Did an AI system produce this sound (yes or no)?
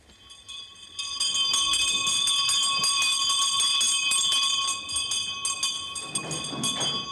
no